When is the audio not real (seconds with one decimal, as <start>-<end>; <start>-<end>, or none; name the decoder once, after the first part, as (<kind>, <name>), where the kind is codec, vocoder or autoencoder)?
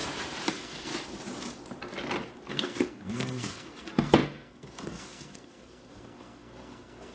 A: 0.5-0.9 (codec, SNAC); 2.5-7.1